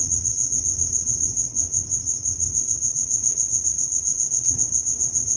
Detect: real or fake fake